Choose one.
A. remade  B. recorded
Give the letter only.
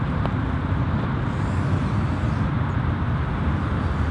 B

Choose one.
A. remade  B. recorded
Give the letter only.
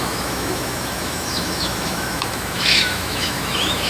A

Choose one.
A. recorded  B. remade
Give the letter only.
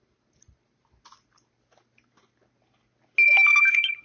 A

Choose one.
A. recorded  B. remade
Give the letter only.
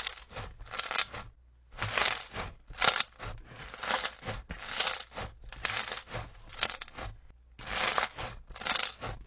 A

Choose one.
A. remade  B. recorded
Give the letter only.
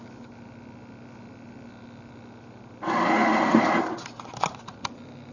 B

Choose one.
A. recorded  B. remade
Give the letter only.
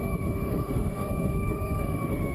B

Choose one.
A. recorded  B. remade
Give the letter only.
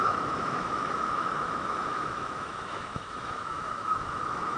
B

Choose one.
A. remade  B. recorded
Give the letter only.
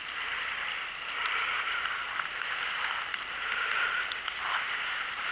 B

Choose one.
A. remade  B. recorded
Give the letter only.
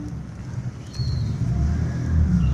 B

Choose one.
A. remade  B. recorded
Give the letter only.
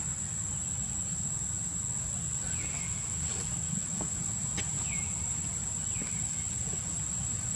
B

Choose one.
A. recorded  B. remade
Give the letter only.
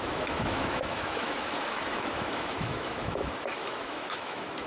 B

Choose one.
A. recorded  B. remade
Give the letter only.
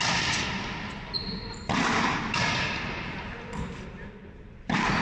A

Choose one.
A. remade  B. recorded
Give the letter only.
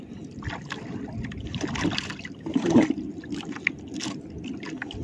B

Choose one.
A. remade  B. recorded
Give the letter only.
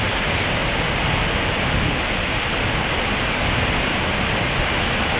B